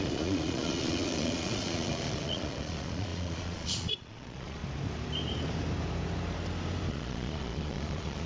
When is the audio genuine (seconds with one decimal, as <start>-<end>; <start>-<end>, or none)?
4.6-6.9